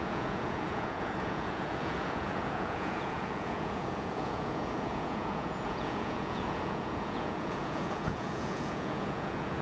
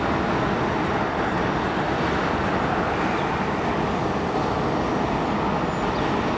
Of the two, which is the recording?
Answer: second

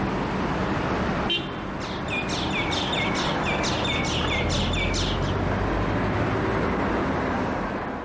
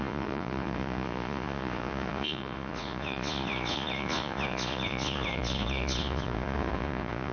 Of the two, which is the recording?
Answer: first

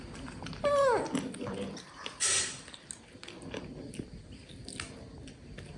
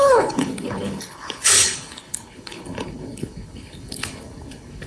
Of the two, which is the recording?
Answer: first